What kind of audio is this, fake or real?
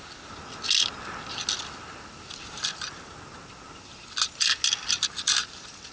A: real